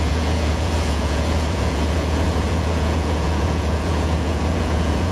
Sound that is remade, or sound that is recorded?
remade